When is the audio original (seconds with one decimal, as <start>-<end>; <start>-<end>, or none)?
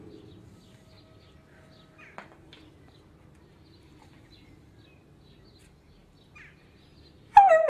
0.0-7.7